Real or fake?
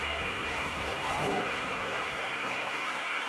fake